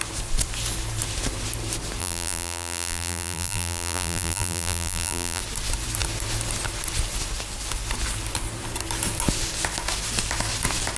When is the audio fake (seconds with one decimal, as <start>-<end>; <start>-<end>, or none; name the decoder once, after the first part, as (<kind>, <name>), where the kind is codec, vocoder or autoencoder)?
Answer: 2.0-5.4 (vocoder, BigVGAN v2)